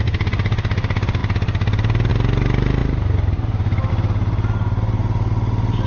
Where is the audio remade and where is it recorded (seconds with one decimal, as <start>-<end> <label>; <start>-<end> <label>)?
0.0-5.9 recorded